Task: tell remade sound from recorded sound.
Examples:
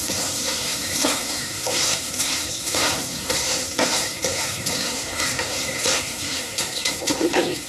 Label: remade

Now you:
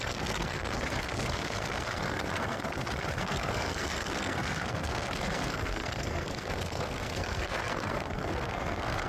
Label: remade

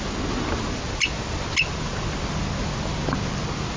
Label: recorded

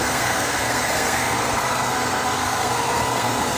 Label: remade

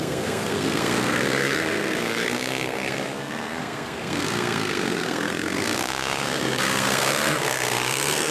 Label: remade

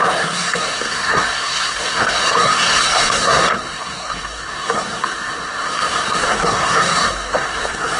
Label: remade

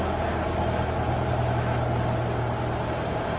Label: recorded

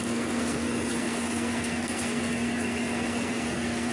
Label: remade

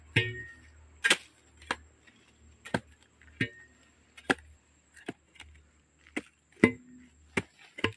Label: recorded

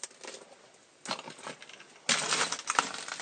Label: recorded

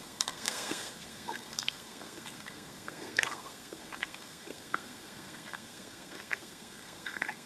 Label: remade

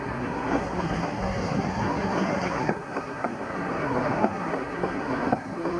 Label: remade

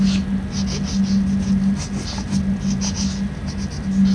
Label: recorded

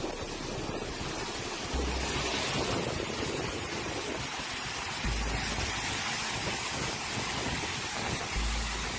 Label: recorded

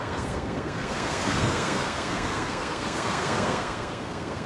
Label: remade